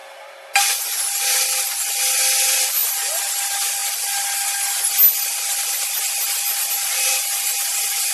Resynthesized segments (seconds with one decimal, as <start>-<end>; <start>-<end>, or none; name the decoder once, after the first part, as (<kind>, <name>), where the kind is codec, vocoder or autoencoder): none